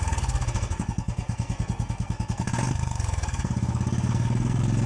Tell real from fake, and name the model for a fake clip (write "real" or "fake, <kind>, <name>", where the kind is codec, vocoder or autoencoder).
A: fake, codec, SNAC